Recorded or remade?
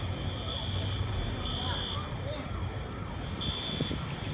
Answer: recorded